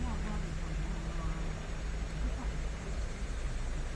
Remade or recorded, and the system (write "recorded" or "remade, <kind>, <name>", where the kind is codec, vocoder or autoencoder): recorded